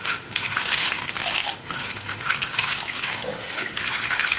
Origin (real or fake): fake